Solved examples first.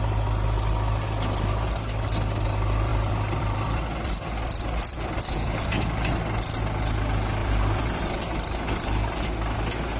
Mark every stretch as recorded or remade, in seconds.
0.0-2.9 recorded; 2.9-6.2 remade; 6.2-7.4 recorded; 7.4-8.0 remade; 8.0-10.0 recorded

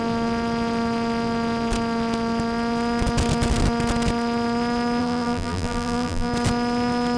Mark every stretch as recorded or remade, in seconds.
0.0-5.0 recorded; 5.0-6.3 remade; 6.3-7.2 recorded

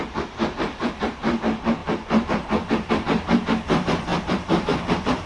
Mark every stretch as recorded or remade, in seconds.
0.0-5.3 remade

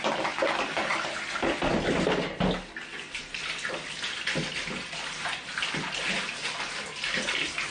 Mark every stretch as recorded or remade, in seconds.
0.0-7.7 recorded